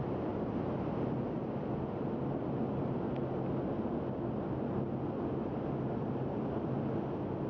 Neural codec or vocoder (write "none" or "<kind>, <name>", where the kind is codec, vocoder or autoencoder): none